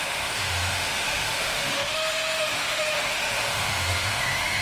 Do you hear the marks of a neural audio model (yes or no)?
yes